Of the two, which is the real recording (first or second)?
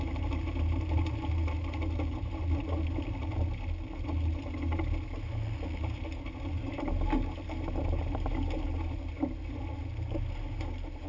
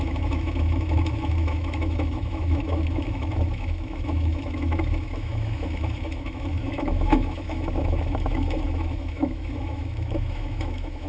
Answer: first